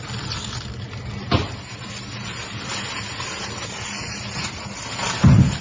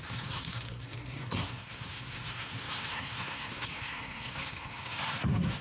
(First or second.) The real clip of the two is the first